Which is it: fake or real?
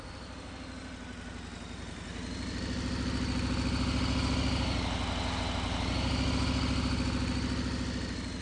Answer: real